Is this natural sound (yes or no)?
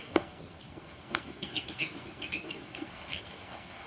no